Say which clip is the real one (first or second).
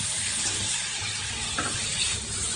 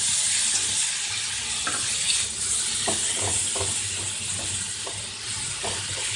second